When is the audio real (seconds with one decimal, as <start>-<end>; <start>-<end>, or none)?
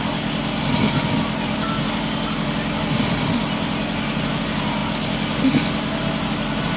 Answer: 0.0-6.8